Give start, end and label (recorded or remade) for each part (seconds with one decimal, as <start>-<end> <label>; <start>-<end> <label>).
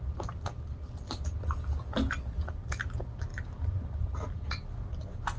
0.0-3.3 recorded; 3.3-4.5 remade; 4.5-5.4 recorded